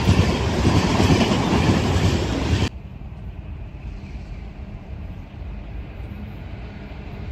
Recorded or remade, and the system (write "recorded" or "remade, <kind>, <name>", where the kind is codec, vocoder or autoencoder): remade, vocoder, BigVGAN v2